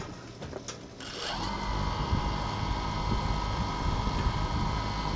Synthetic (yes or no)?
no